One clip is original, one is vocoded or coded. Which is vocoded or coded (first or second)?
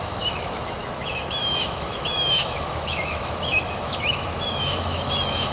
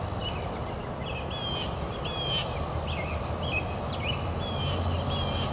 first